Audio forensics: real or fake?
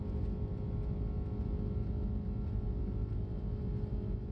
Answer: real